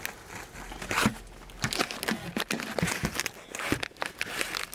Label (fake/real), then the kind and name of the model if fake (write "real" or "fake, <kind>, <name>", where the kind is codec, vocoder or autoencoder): real